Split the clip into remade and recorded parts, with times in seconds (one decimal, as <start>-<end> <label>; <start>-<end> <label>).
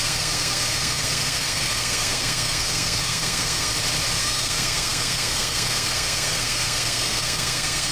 0.0-3.7 remade; 3.7-4.2 recorded; 4.2-7.9 remade